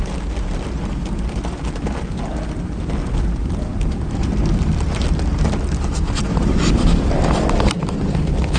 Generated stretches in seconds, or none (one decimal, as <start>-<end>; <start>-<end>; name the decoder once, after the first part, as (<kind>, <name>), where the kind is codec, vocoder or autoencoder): 3.7-5.4 (vocoder, BigVGAN v2); 6.3-7.7